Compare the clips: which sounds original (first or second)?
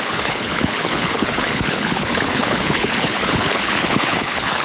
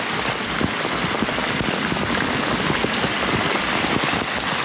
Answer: second